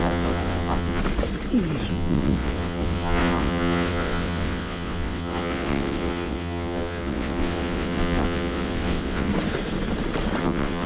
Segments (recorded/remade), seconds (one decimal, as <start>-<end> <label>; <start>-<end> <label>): 0.0-1.0 remade; 1.0-1.9 recorded; 1.9-9.3 remade; 9.3-10.4 recorded; 10.4-10.9 remade

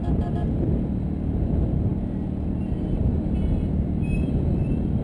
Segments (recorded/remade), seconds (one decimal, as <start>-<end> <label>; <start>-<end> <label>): 0.0-5.0 recorded

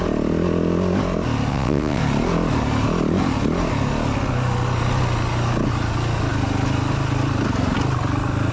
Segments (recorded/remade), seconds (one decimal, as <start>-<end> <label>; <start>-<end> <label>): 0.0-1.5 recorded; 1.5-2.0 remade; 2.0-8.5 recorded

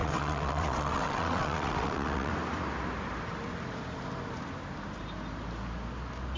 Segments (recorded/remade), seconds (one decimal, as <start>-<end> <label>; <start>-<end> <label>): 0.0-2.3 remade; 2.3-6.4 recorded

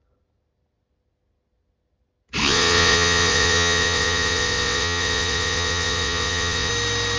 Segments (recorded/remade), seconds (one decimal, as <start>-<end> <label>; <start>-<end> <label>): 0.0-2.4 recorded; 2.4-6.7 remade; 6.7-7.2 recorded